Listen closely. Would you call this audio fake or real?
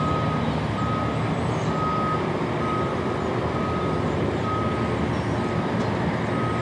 real